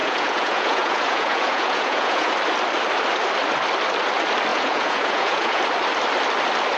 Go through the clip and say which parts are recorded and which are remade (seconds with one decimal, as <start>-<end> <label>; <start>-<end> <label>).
0.0-2.3 remade; 2.3-4.5 recorded; 4.5-5.6 remade; 5.6-6.8 recorded